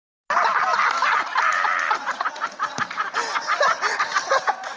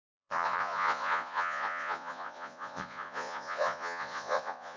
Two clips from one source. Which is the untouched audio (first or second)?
first